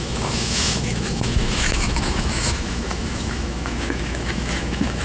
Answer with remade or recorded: remade